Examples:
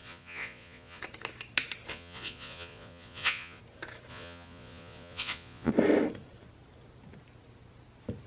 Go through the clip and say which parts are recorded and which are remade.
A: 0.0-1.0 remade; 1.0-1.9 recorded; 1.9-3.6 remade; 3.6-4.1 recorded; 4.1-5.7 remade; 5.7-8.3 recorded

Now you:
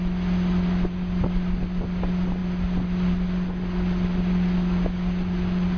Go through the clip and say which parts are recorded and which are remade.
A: 0.0-5.8 recorded